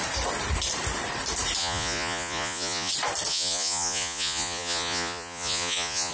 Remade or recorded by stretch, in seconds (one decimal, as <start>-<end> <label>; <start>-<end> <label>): 0.0-1.6 recorded; 1.6-2.9 remade; 2.9-3.3 recorded; 3.3-6.1 remade